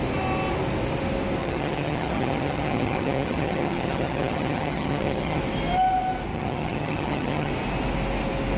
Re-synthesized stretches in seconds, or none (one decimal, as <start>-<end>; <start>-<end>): 1.4-5.4; 6.3-7.5